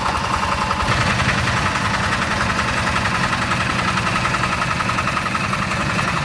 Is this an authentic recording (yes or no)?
no